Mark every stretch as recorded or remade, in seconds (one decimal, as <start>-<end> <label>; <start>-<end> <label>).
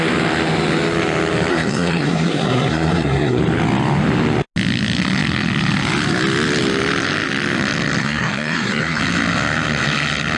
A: 0.0-1.5 recorded; 1.5-3.4 remade; 3.4-8.0 recorded; 8.0-9.0 remade; 9.0-10.4 recorded